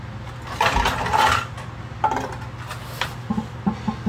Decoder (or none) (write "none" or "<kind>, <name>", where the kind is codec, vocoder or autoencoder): none